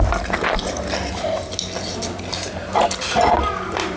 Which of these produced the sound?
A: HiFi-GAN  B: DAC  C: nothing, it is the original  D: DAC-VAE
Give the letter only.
C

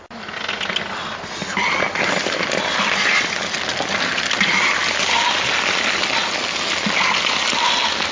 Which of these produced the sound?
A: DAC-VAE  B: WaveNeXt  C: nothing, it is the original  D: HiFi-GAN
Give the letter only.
C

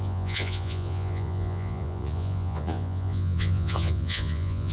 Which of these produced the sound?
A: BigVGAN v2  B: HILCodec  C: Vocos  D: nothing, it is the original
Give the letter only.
C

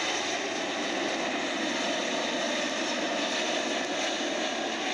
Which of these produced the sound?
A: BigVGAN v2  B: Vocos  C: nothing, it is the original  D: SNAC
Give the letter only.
C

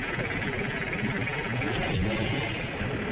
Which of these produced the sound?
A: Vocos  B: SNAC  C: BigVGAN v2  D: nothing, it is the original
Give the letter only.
D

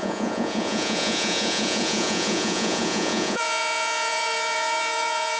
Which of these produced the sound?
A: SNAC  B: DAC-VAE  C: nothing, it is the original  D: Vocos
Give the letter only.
D